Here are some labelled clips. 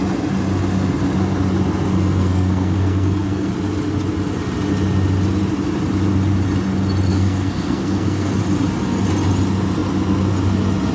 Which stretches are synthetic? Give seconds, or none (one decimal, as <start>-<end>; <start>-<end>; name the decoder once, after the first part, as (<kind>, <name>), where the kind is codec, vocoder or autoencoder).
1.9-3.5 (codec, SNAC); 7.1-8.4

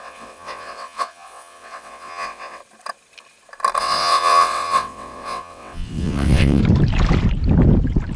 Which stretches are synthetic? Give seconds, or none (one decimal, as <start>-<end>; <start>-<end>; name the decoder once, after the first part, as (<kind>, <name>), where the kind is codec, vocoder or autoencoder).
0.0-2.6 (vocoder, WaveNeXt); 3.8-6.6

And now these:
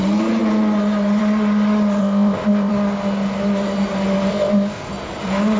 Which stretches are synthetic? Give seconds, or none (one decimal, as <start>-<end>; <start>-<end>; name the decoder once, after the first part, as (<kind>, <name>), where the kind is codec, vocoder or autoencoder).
2.0-2.7 (codec, ZipCodec); 4.3-4.9